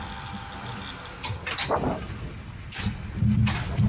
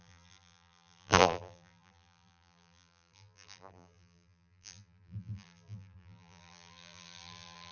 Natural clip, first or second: first